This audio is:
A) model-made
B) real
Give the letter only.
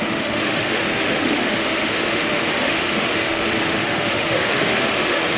A